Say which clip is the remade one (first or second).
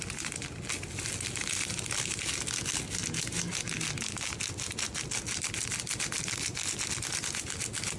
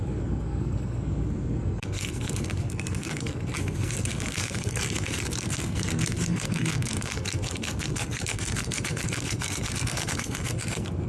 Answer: second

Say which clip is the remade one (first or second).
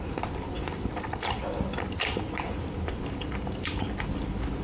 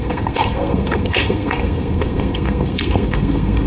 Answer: second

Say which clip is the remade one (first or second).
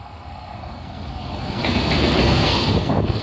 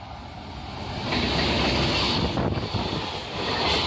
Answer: first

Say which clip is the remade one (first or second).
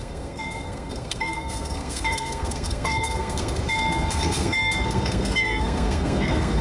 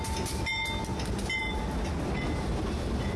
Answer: first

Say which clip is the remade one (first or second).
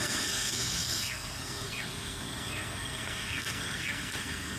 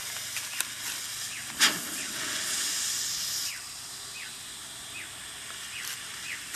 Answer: first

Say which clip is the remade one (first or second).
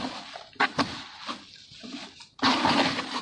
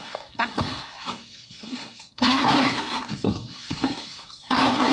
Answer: second